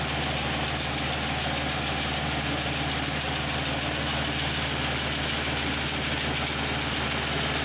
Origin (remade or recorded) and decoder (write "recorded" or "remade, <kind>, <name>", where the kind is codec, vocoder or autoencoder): recorded